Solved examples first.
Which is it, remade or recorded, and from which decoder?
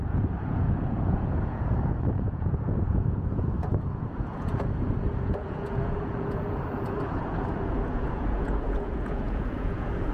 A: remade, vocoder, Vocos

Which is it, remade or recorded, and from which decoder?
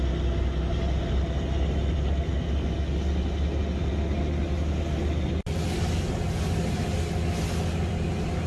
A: recorded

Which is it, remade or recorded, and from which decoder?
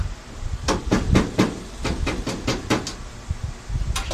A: recorded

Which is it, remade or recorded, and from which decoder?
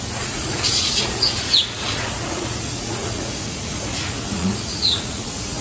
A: remade, vocoder, Vocos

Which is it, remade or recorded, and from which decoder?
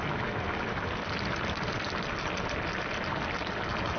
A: recorded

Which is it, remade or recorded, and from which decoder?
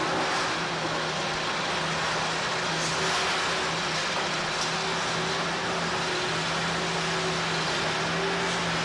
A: recorded